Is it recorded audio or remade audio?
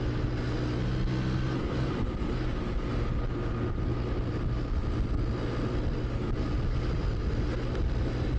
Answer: recorded